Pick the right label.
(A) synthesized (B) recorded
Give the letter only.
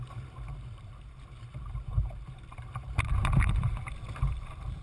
A